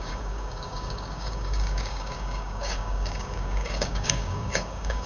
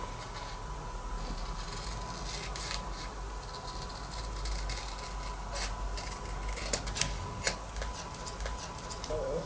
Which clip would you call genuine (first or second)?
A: second